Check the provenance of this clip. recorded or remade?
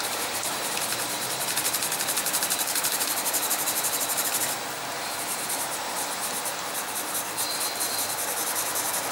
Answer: remade